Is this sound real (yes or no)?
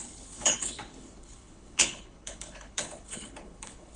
no